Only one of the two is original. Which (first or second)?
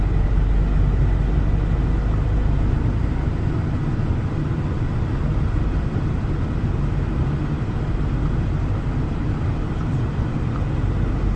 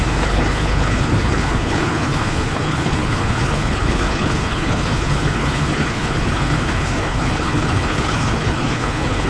first